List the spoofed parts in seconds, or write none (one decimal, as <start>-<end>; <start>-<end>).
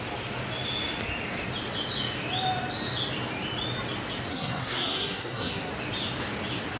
4.3-5.7